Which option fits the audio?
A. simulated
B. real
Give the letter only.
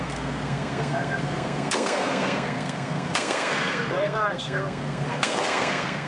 A